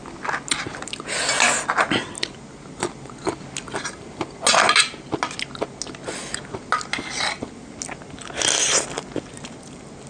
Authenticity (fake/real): real